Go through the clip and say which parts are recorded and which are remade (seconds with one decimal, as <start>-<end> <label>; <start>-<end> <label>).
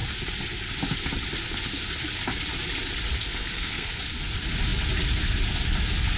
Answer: 0.0-3.3 recorded; 3.3-4.0 remade; 4.0-6.2 recorded